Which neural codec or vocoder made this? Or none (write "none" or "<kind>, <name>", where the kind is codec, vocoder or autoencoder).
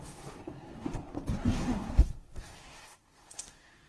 codec, SNAC